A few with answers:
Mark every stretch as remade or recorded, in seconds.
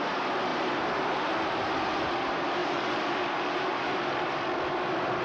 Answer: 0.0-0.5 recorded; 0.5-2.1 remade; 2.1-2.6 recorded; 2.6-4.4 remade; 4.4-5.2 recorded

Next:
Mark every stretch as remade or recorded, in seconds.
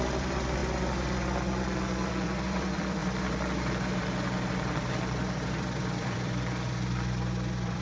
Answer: 0.0-0.6 remade; 0.6-2.1 recorded; 2.1-3.0 remade; 3.0-5.5 recorded; 5.5-7.8 remade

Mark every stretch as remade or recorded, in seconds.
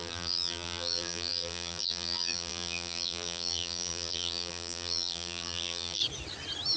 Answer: 0.0-6.0 remade; 6.0-6.8 recorded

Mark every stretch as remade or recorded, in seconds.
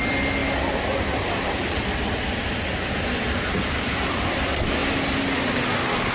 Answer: 0.0-6.1 recorded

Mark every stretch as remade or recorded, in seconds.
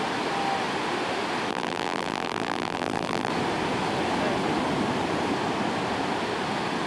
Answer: 0.0-1.5 recorded; 1.5-3.3 remade; 3.3-6.9 recorded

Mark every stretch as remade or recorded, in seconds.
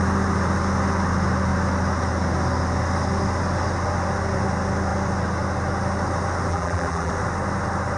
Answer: 0.0-6.5 recorded; 6.5-7.1 remade; 7.1-8.0 recorded